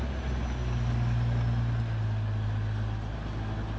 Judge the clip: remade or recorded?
recorded